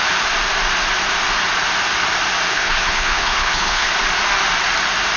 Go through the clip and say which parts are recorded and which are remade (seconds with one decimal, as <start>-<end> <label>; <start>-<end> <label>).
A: 0.0-2.5 recorded; 2.5-3.9 remade; 3.9-5.2 recorded